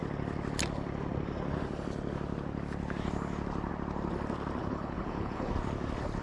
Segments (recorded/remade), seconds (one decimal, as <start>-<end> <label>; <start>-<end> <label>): 0.0-4.6 recorded; 4.6-5.5 remade; 5.5-6.2 recorded